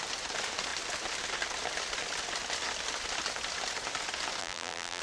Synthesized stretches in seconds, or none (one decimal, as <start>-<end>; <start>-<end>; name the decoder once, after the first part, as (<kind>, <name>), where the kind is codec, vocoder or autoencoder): 4.4-5.0 (vocoder, BigVGAN v2)